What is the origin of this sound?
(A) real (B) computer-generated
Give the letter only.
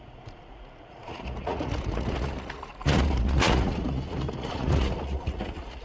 B